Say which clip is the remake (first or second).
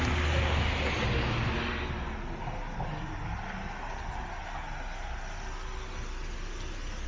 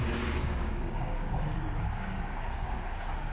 second